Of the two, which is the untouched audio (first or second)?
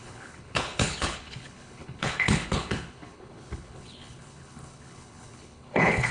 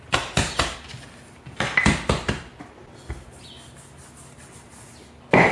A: second